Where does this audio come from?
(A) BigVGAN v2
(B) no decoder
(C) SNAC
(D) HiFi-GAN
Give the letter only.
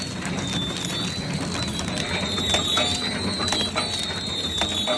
B